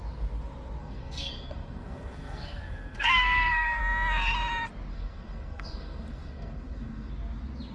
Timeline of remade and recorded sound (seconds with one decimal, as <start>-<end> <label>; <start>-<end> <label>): 0.0-0.8 recorded; 0.8-3.8 remade; 3.8-4.9 recorded; 4.9-7.1 remade; 7.1-7.7 recorded